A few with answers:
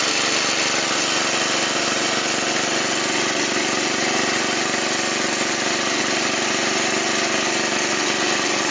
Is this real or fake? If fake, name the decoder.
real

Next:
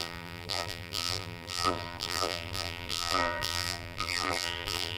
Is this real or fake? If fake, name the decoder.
fake, vocoder, BigVGAN v2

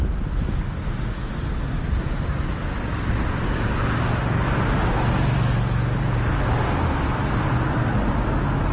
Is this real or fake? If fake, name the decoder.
real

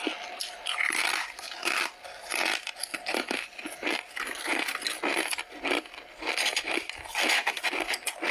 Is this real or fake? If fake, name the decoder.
real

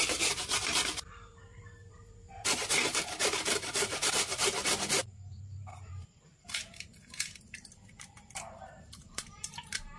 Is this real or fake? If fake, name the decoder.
fake, vocoder, BigVGAN v2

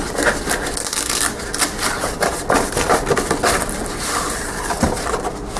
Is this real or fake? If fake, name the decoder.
real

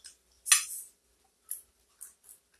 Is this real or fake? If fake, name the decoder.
real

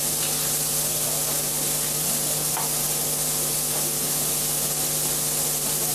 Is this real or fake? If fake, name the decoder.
real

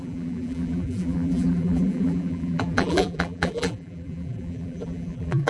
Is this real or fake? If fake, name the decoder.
fake, vocoder, BigVGAN v2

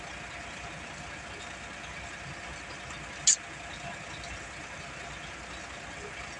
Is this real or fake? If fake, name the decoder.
real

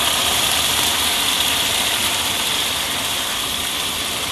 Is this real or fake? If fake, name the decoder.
fake, vocoder, BigVGAN v2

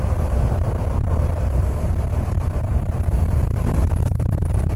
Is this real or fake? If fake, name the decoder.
fake, vocoder, BigVGAN v2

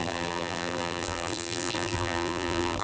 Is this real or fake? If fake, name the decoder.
fake, vocoder, BigVGAN v2